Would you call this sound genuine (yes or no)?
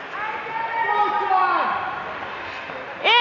yes